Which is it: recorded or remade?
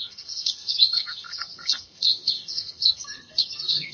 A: remade